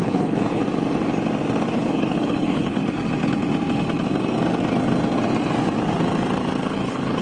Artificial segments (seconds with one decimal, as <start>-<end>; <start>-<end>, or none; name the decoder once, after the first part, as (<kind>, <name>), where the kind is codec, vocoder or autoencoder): 0.0-0.6 (codec, HILCodec); 1.7-2.8; 6.7-7.2